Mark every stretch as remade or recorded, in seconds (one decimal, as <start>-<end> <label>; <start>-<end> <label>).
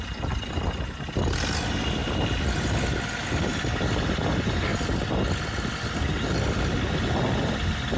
0.0-8.0 recorded